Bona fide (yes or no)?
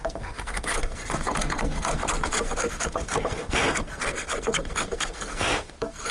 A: no